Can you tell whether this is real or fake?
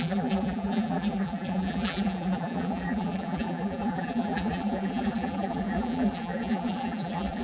fake